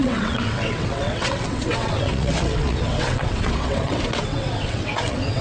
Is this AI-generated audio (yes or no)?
yes